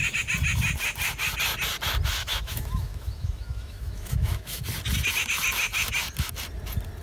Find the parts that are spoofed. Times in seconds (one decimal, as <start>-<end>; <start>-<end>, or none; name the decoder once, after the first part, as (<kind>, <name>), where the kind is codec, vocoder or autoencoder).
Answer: 2.2-4.6 (autoencoder, DAC-VAE)